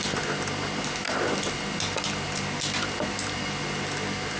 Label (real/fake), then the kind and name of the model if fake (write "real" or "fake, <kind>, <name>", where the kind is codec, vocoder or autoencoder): real